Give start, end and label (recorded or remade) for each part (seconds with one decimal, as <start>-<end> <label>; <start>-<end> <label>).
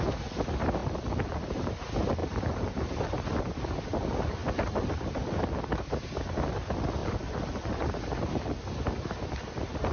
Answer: 0.0-0.8 recorded; 0.8-1.7 remade; 1.7-2.2 recorded; 2.2-3.4 remade; 3.4-4.4 recorded; 4.4-5.6 remade; 5.6-7.0 recorded; 7.0-7.9 remade; 7.9-9.9 recorded